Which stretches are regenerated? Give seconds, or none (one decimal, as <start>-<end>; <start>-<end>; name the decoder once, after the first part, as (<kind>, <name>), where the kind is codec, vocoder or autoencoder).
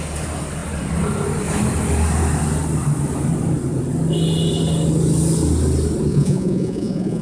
6.1-7.2 (vocoder, Vocos)